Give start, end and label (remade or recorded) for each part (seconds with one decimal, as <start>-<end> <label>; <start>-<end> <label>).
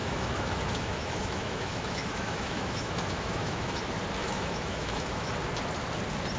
0.0-3.8 remade; 3.8-4.2 recorded; 4.2-5.3 remade; 5.3-6.4 recorded